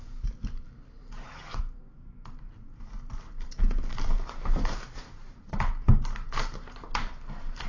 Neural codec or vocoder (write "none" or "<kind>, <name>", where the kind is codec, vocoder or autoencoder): vocoder, BigVGAN v2